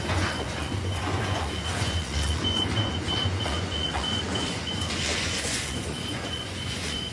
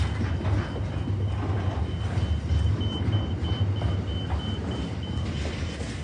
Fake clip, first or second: first